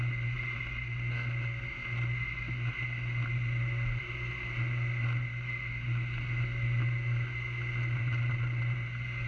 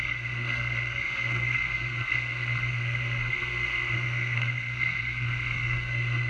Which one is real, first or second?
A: first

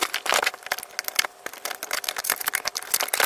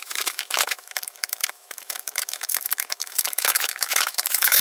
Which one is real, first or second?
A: first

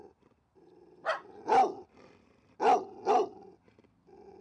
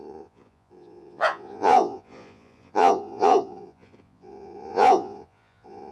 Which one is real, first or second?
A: first